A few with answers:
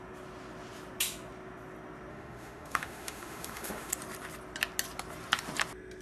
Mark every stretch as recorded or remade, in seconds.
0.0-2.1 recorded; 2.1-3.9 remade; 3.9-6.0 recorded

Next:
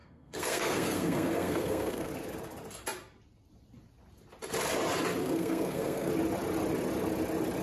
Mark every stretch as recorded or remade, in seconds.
0.0-2.1 remade; 2.1-5.2 recorded; 5.2-6.1 remade; 6.1-7.6 recorded

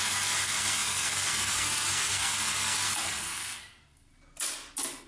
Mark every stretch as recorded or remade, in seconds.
0.0-4.1 remade; 4.1-5.1 recorded

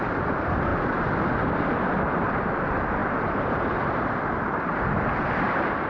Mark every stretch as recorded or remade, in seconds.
0.0-3.0 recorded; 3.0-3.7 remade; 3.7-5.9 recorded

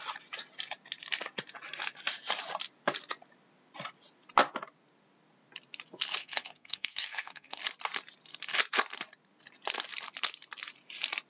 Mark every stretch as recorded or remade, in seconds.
0.0-6.2 recorded; 6.2-7.6 remade; 7.6-11.3 recorded

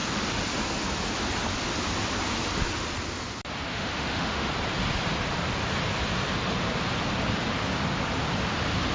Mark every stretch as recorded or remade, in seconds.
0.0-3.7 recorded; 3.7-4.5 remade; 4.5-8.9 recorded